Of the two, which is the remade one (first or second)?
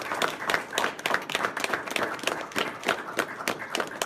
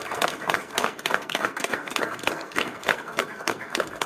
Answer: second